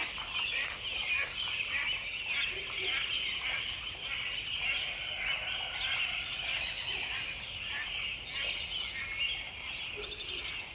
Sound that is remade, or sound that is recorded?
recorded